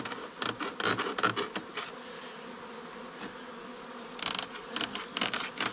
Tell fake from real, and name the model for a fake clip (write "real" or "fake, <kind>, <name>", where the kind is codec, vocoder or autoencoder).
real